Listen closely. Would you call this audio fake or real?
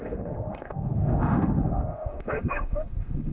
fake